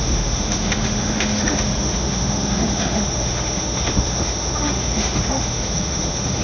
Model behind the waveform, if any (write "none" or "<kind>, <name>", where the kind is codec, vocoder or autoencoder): autoencoder, DAC-VAE